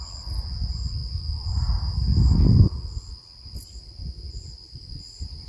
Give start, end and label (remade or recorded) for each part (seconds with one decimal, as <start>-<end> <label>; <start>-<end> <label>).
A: 0.0-5.5 recorded